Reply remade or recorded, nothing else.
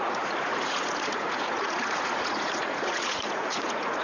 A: remade